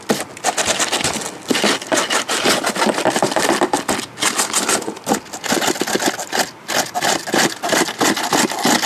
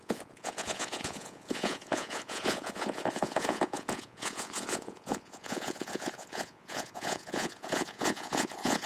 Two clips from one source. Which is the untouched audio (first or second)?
first